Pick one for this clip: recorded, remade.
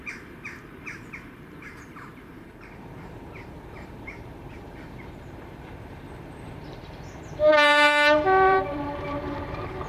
remade